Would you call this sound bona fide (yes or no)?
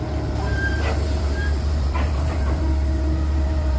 no